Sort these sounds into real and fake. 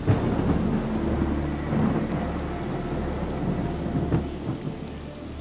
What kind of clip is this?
real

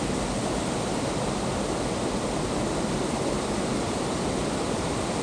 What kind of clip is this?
real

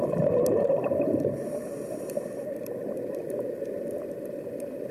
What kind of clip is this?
real